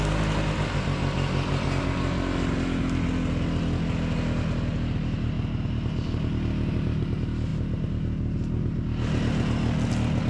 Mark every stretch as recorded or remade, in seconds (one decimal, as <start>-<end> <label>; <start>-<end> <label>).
0.0-10.3 recorded